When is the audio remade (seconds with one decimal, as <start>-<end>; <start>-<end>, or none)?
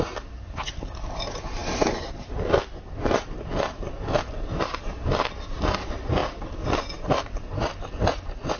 none